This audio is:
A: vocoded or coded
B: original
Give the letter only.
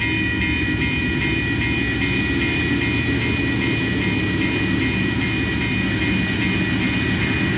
B